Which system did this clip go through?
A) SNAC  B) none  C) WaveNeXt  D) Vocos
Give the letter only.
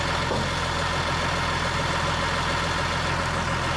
B